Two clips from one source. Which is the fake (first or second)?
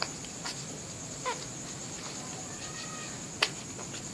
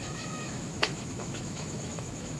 second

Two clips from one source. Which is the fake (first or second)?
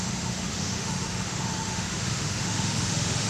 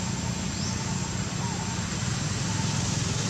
first